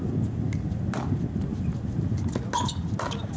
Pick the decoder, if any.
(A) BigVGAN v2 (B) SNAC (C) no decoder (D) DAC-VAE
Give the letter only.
C